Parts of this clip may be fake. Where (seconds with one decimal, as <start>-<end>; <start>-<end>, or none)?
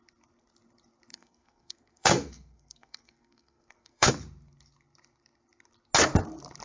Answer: 1.1-4.1